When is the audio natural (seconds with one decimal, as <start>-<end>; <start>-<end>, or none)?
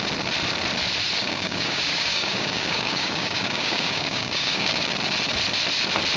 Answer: 0.0-1.2; 4.9-6.2